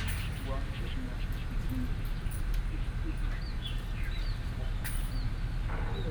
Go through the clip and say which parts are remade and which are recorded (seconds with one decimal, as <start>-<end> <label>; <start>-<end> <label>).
0.0-6.1 recorded